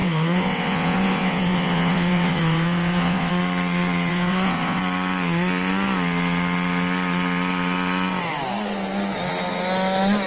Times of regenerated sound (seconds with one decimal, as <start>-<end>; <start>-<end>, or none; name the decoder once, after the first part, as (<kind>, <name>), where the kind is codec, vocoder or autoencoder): 0.0-3.3 (vocoder, WaveNeXt); 4.1-4.8